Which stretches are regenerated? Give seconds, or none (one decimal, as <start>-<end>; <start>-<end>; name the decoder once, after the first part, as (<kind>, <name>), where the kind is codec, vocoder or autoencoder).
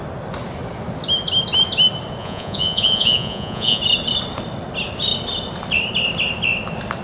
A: 2.2-3.8 (vocoder, Vocos)